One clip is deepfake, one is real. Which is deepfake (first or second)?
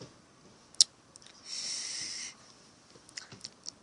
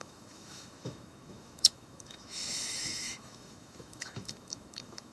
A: second